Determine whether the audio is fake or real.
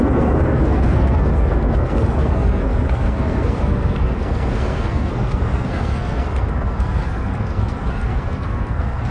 fake